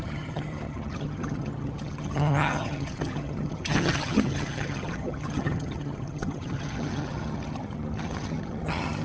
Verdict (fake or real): fake